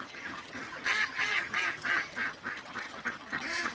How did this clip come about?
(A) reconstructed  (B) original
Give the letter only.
A